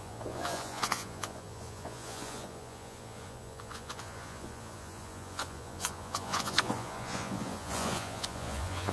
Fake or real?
fake